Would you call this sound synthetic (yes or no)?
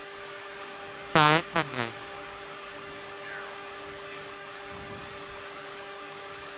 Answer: yes